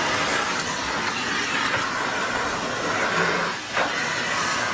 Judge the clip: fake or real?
real